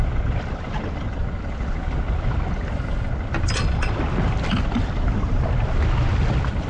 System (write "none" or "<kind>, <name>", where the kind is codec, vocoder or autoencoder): none